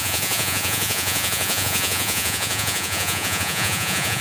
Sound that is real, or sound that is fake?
fake